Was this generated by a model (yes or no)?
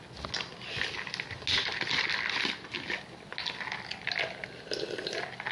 no